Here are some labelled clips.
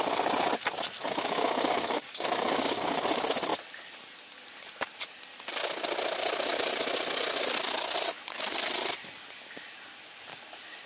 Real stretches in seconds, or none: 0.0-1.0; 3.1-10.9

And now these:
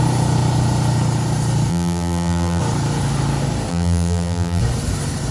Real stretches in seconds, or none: 0.0-1.7; 2.6-3.7; 4.6-5.3

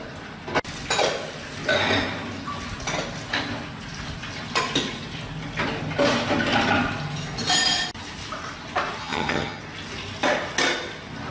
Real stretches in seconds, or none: 0.0-9.0; 9.6-11.3

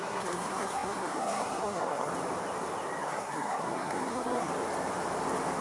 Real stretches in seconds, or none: 2.1-3.0; 4.5-5.6